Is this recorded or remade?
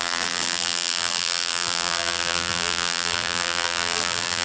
remade